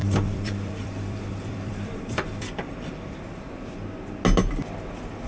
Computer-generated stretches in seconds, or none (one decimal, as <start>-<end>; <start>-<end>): 0.0-3.2